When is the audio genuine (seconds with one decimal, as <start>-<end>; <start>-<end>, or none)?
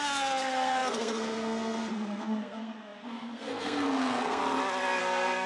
4.4-5.0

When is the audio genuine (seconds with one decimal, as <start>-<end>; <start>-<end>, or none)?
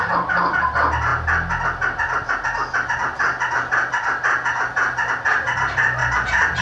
0.0-6.6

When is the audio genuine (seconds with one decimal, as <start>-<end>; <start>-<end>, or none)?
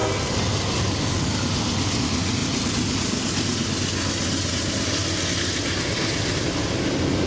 0.0-7.3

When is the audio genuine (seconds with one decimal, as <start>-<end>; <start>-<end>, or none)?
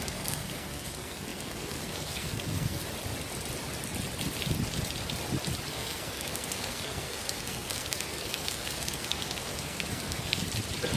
2.8-5.7; 10.4-11.0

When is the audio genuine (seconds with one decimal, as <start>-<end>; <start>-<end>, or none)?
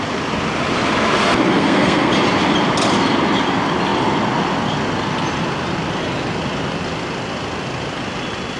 0.0-1.5; 2.1-8.6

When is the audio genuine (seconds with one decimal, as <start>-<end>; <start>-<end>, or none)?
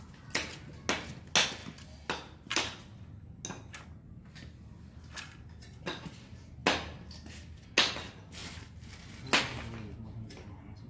0.0-10.9